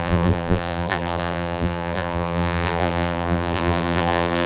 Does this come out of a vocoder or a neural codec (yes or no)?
yes